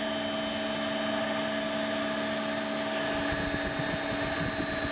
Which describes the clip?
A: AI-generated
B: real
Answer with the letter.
B